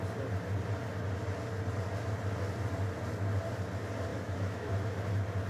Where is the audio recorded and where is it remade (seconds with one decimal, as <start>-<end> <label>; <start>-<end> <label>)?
0.0-4.1 recorded; 4.1-4.7 remade; 4.7-5.5 recorded